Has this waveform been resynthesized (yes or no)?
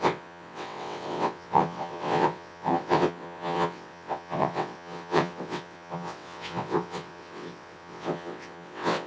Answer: yes